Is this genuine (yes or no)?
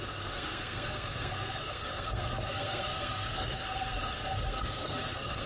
no